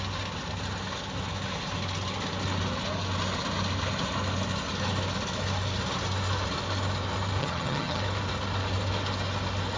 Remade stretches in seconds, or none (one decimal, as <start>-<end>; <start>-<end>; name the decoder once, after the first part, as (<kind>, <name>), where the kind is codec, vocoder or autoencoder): 7.4-8.0 (vocoder, HiFi-GAN)